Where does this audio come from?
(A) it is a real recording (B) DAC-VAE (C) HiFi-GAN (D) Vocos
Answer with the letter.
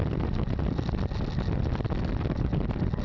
A